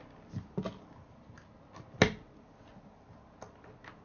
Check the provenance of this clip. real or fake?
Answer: real